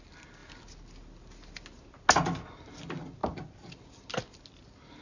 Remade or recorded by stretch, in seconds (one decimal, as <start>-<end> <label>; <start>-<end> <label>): 0.0-5.0 recorded